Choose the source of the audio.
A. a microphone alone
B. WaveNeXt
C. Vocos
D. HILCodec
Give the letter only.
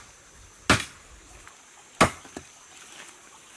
A